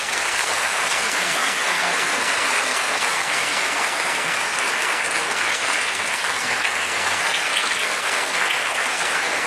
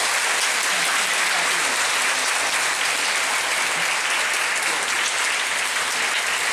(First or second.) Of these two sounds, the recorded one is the second